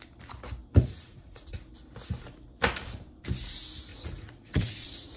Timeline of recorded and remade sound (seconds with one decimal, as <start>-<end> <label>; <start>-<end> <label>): 0.0-0.8 recorded; 0.8-1.6 remade; 1.6-3.9 recorded; 3.9-5.2 remade